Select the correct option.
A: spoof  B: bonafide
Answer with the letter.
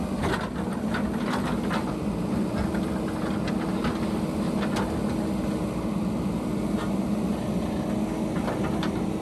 B